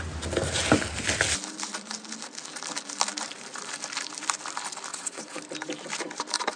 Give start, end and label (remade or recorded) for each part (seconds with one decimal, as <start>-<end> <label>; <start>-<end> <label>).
0.0-4.9 recorded; 4.9-5.4 remade; 5.4-6.6 recorded